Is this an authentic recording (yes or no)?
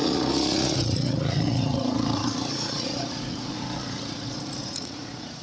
no